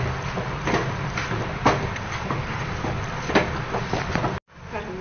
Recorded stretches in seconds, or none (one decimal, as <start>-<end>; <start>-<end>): 0.0-5.0